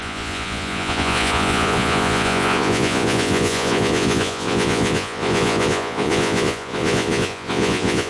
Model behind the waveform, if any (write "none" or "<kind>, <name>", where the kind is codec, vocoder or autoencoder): vocoder, Vocos